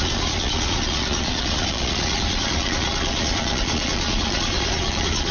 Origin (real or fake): fake